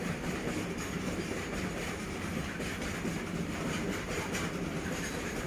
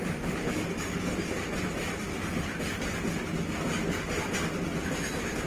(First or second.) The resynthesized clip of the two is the first